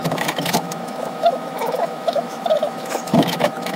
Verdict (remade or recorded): remade